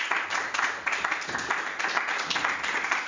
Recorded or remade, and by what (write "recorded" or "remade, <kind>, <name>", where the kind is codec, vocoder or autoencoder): recorded